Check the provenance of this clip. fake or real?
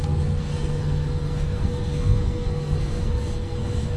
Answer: fake